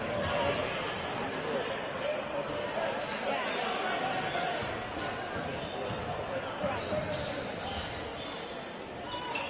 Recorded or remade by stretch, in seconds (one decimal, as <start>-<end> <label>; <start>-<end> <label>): 0.0-9.5 recorded